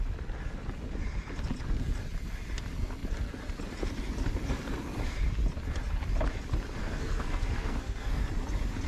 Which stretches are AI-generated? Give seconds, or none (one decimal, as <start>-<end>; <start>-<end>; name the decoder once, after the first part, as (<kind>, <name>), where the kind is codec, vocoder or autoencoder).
6.8-8.2 (codec, SNAC)

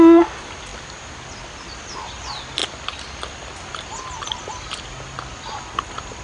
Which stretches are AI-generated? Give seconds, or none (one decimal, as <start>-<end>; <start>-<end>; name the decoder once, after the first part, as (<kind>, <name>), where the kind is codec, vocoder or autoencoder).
none

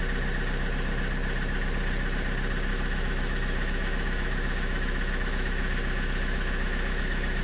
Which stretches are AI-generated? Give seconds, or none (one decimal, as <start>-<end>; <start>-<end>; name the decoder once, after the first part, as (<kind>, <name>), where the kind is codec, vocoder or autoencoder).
2.7-7.4 (autoencoder, DAC-VAE)

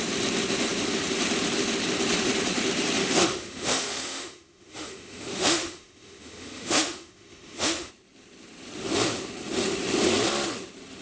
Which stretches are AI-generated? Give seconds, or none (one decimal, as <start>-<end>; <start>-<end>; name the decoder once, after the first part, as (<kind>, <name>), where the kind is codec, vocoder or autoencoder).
3.0-7.9 (autoencoder, DAC-VAE)

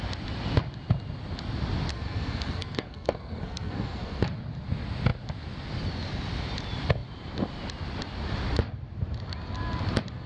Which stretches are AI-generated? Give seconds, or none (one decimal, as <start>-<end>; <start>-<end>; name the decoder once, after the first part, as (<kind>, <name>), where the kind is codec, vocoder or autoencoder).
1.9-4.2 (codec, SNAC)

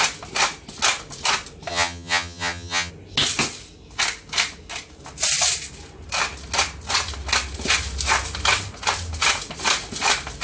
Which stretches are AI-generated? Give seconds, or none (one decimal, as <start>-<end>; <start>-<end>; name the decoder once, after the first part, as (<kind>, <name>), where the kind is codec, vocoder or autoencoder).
1.7-2.9 (vocoder, HiFi-GAN)